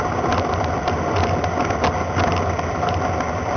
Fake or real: real